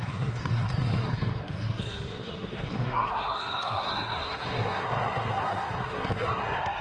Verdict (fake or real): fake